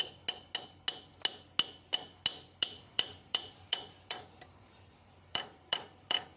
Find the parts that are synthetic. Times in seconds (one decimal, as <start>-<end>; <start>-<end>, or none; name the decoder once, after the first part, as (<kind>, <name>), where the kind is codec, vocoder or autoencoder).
2.3-6.4 (vocoder, BigVGAN v2)